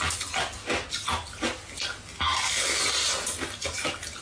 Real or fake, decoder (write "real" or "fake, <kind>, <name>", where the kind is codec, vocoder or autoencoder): real